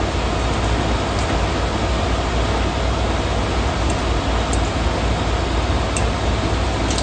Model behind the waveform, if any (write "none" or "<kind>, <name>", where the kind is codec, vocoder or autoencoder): none